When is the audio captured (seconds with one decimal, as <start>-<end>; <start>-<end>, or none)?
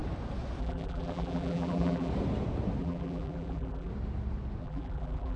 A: 0.0-0.6; 2.1-2.8; 3.9-4.6